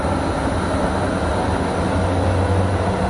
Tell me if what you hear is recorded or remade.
recorded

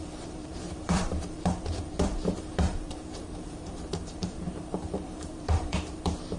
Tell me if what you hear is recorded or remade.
remade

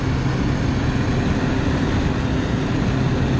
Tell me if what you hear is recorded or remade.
recorded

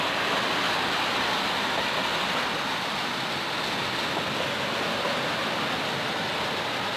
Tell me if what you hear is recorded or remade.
recorded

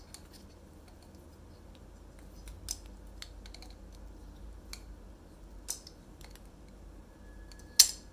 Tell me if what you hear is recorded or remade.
recorded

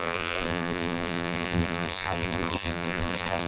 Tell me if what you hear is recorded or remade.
remade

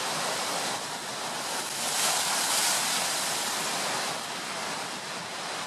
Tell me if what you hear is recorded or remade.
recorded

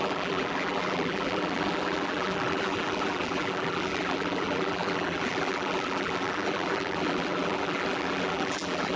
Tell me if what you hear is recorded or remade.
remade